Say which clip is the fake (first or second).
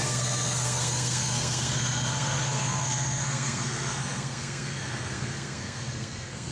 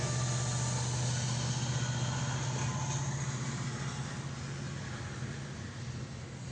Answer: first